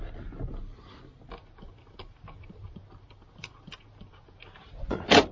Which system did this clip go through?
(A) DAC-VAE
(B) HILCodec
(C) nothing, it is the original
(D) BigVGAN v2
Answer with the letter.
C